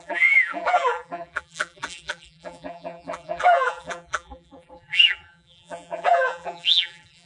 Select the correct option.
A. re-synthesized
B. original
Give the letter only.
A